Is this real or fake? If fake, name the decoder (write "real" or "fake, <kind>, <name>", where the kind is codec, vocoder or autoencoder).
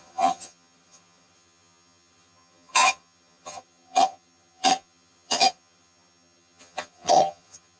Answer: fake, vocoder, HiFi-GAN